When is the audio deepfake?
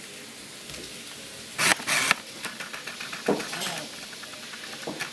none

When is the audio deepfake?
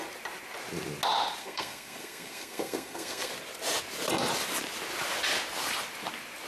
1.4-3.3 (codec, SNAC)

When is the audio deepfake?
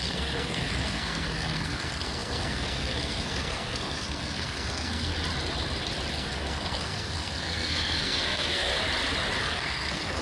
0.0-5.1 (codec, SNAC); 6.1-8.7; 9.4-10.2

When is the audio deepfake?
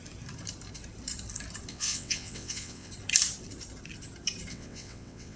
1.7-2.9 (vocoder, WaveNeXt); 4.5-5.4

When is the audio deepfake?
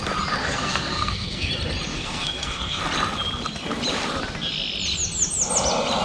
0.4-1.5 (codec, SNAC); 1.9-2.8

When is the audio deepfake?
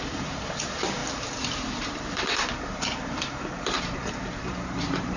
0.0-5.2 (vocoder, BigVGAN v2)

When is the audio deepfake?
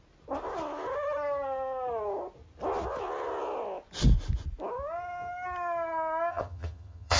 6.3-7.2 (vocoder, HiFi-GAN)